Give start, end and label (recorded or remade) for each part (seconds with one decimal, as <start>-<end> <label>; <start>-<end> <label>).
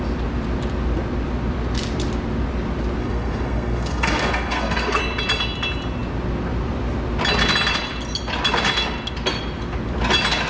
0.0-3.0 recorded; 3.0-5.0 remade; 5.0-10.5 recorded